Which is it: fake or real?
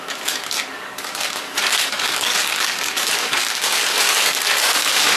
fake